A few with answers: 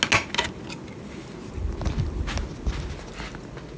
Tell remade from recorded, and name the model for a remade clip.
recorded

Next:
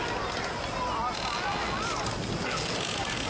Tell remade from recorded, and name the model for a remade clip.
recorded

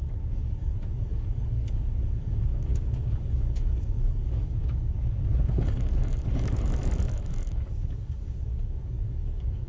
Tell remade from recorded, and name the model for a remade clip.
remade, codec, DAC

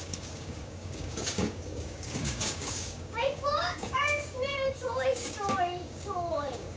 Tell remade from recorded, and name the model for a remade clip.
remade, codec, DAC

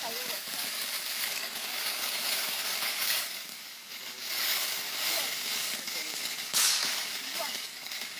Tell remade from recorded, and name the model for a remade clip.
remade, codec, DAC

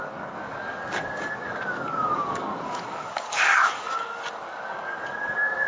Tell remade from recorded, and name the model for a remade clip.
remade, codec, DAC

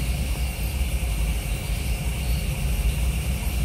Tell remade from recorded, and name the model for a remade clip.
recorded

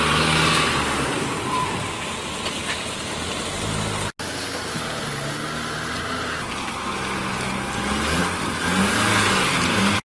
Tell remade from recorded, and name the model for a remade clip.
recorded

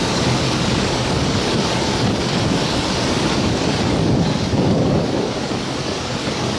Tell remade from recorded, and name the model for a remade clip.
remade, codec, DAC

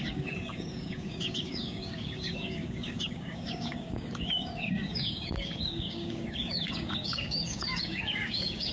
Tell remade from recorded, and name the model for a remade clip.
remade, codec, DAC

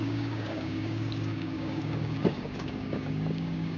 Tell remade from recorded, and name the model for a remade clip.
remade, codec, DAC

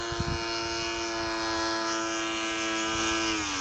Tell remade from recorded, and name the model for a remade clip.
recorded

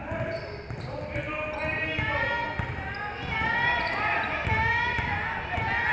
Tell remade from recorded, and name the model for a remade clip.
recorded